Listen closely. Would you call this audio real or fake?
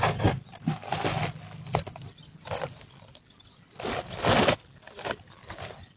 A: real